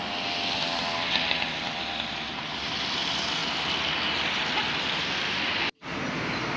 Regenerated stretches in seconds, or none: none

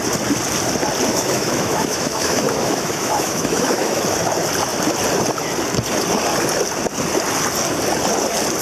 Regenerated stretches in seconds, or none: 1.1-4.0